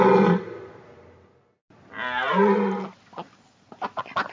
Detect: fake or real real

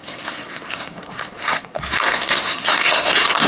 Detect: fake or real fake